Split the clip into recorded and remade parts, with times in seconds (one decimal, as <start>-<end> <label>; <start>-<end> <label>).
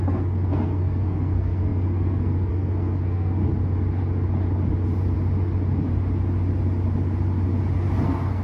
0.0-3.4 remade; 3.4-8.0 recorded; 8.0-8.4 remade